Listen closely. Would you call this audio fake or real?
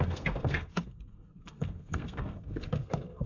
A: fake